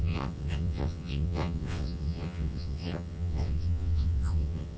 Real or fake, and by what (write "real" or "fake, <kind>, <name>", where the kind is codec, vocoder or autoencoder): fake, vocoder, WaveNeXt